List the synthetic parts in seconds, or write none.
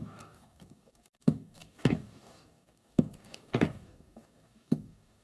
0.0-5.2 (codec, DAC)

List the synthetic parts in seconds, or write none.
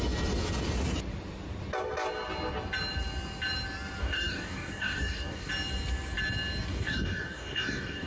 4.0-5.5 (codec, DAC); 6.7-8.1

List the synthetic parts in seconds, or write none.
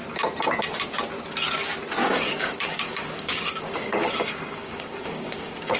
2.0-5.8 (codec, DAC)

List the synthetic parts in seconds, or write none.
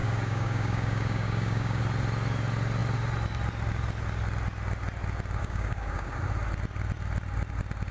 0.0-1.8 (codec, DAC); 5.4-6.2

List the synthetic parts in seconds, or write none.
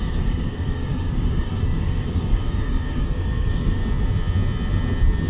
0.0-3.8 (codec, DAC)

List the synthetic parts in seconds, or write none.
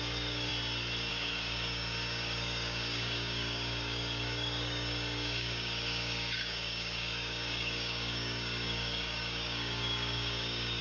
0.0-0.5 (codec, DAC); 1.1-10.8